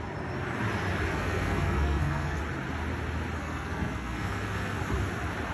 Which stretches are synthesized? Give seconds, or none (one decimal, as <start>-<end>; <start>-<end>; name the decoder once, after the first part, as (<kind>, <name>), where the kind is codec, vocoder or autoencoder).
1.1-2.4 (codec, SNAC); 3.4-4.8